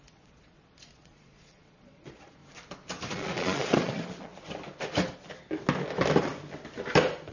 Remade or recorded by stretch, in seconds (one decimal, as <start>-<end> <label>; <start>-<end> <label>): 0.0-2.4 remade; 2.4-3.1 recorded; 3.1-4.3 remade; 4.3-7.3 recorded